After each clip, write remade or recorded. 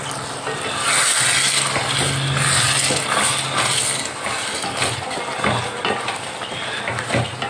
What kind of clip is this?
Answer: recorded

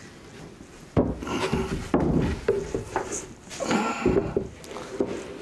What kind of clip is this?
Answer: recorded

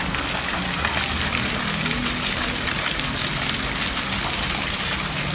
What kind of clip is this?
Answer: recorded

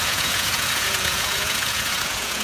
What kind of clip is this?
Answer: remade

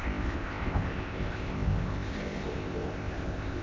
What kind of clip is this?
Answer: remade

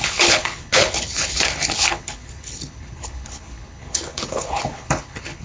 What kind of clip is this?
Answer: remade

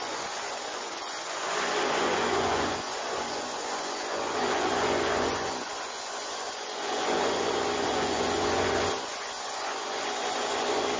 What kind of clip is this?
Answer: remade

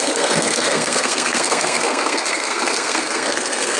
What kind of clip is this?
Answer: remade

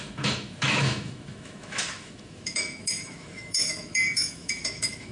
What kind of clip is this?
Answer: remade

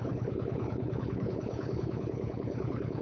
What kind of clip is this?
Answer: remade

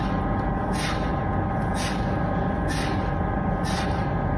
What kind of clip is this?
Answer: remade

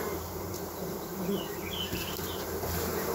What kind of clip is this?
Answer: remade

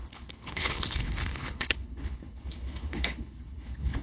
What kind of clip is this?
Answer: remade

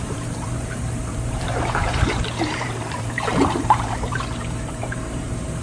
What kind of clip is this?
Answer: remade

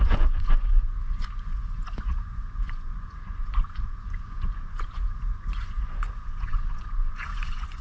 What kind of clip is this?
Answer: remade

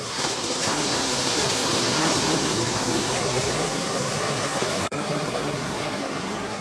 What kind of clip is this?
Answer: remade